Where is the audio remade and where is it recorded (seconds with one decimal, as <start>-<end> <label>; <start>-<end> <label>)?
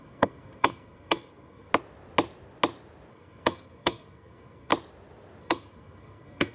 0.0-1.7 remade; 1.7-3.1 recorded; 3.1-4.7 remade; 4.7-5.4 recorded; 5.4-6.5 remade